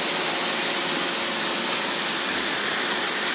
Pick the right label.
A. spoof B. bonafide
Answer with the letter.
B